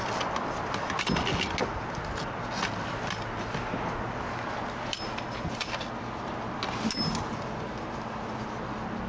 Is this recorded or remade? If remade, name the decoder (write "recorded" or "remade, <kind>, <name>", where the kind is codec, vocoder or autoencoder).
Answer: recorded